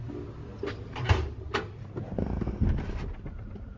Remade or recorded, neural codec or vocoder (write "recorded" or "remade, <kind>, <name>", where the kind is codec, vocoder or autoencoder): recorded